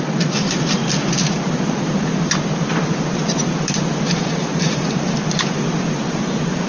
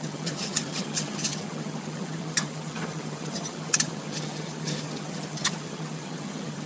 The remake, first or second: second